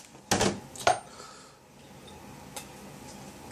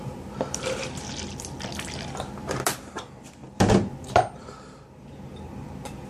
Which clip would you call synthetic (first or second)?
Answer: second